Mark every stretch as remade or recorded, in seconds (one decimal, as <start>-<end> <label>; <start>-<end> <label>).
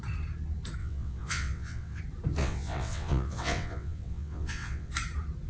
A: 0.0-0.8 recorded; 0.8-2.0 remade; 2.0-2.4 recorded; 2.4-4.9 remade; 4.9-5.5 recorded